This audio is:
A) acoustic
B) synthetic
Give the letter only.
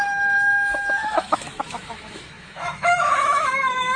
B